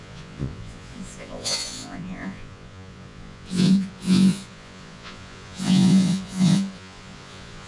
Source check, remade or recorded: remade